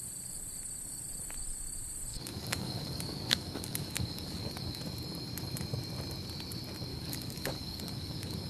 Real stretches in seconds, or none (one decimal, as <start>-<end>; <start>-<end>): 0.0-2.1; 4.8-6.9